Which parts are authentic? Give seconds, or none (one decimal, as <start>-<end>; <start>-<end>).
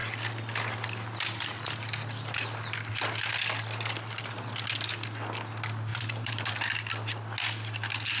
0.0-5.9; 6.5-8.2